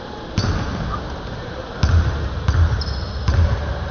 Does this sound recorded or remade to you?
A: recorded